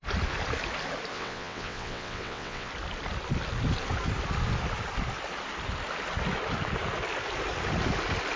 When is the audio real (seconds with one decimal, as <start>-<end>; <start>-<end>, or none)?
0.0-1.1; 2.7-8.4